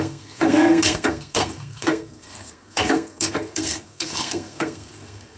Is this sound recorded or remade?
remade